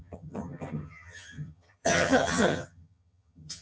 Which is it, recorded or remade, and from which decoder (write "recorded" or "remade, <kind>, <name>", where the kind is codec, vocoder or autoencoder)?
remade, vocoder, HiFi-GAN